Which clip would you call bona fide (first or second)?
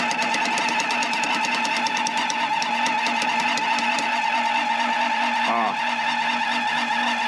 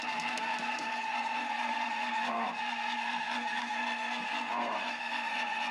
first